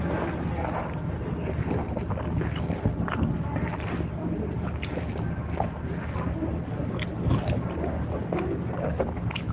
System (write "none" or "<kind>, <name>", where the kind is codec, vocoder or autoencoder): none